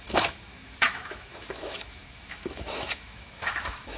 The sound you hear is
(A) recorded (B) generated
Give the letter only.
B